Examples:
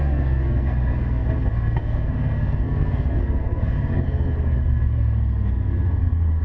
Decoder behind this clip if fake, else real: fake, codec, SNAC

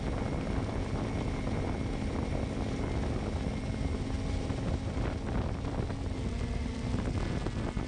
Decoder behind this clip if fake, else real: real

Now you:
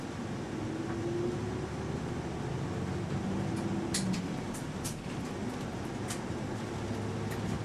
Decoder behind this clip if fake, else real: real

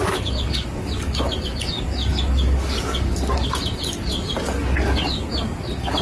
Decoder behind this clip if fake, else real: fake, codec, DAC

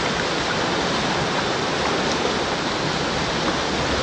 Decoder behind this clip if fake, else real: real